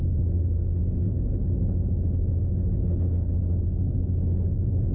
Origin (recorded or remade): recorded